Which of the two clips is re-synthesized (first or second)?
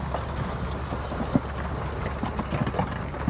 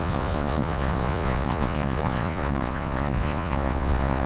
second